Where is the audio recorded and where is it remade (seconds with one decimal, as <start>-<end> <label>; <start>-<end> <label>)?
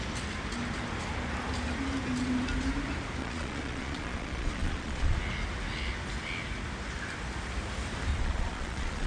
0.0-3.2 recorded; 3.2-5.2 remade; 5.2-8.1 recorded; 8.1-9.1 remade